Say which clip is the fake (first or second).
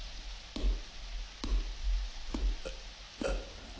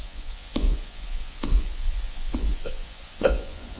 second